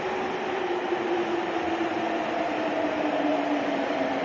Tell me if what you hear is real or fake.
real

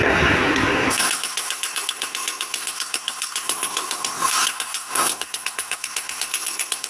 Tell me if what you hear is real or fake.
fake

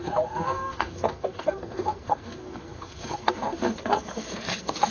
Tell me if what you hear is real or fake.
fake